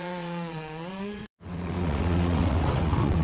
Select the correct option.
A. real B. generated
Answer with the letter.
B